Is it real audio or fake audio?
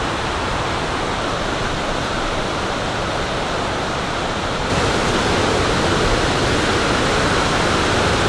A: real